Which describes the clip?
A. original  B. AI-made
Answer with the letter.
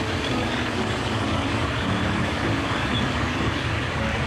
B